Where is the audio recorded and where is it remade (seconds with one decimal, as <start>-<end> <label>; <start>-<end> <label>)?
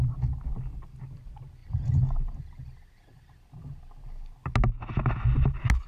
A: 0.0-1.6 recorded; 1.6-2.4 remade; 2.4-5.9 recorded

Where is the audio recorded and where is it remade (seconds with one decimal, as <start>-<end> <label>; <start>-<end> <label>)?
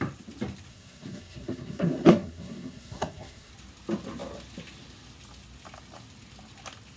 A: 0.0-0.7 recorded; 0.7-3.5 remade; 3.5-7.0 recorded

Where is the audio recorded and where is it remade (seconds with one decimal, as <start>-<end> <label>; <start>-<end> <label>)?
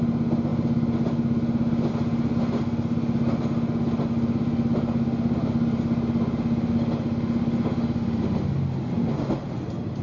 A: 0.0-10.0 recorded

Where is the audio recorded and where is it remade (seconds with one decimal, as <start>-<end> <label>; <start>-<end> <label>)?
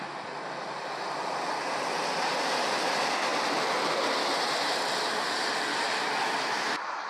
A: 0.0-7.1 recorded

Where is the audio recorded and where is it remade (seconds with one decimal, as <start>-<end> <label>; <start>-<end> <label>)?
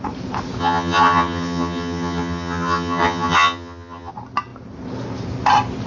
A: 0.0-0.6 recorded; 0.6-4.1 remade; 4.1-5.9 recorded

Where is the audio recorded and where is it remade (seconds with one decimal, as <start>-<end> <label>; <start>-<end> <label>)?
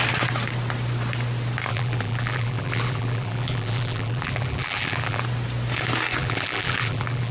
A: 0.0-1.7 recorded; 1.7-5.2 remade; 5.2-6.2 recorded; 6.2-7.3 remade